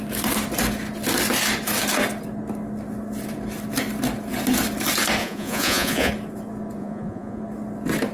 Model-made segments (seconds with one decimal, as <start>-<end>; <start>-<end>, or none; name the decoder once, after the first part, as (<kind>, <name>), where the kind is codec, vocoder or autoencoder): 5.2-6.1 (vocoder, Vocos); 6.8-7.4